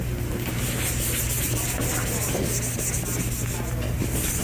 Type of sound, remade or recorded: recorded